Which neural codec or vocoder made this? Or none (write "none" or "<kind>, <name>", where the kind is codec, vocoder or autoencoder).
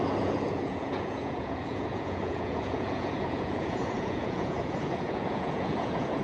vocoder, Vocos